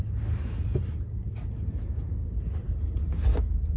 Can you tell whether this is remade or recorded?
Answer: recorded